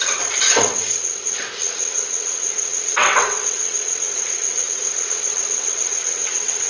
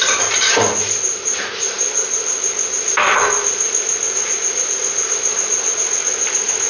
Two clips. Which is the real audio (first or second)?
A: second